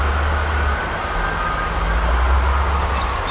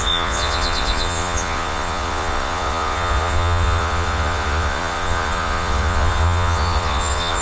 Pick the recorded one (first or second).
first